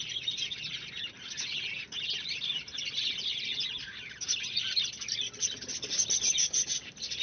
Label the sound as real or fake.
real